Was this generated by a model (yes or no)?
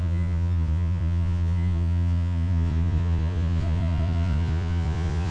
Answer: yes